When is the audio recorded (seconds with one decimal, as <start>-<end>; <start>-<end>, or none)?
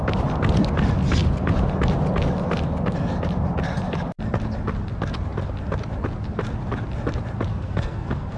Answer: 0.0-7.5